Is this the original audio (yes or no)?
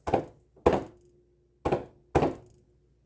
yes